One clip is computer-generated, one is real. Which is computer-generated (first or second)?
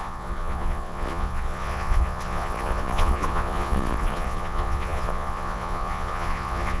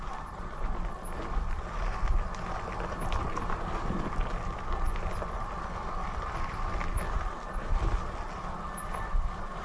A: first